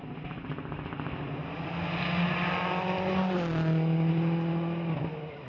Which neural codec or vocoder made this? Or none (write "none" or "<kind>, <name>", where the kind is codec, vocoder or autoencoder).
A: none